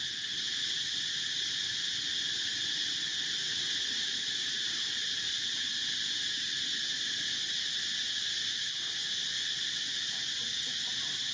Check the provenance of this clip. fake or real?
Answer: real